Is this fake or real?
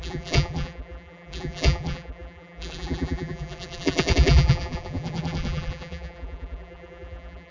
fake